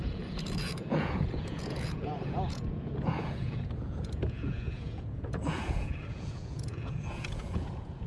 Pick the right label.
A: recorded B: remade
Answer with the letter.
B